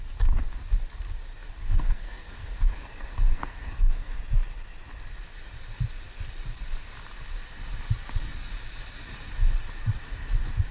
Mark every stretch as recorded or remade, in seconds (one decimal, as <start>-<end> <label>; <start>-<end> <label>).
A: 0.0-1.6 recorded; 1.6-4.2 remade; 4.2-10.7 recorded